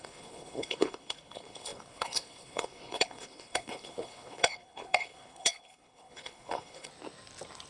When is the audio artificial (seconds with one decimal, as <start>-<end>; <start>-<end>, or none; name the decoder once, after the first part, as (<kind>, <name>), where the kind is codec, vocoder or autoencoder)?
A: 0.0-6.9 (codec, HILCodec)